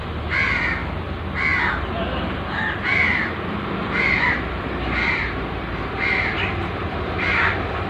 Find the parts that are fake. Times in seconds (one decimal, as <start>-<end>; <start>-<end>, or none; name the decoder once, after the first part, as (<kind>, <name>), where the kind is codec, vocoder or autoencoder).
0.0-0.8 (vocoder, BigVGAN v2); 1.7-7.9